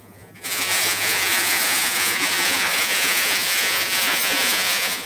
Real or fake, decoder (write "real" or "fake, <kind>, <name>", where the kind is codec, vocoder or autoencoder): fake, vocoder, Vocos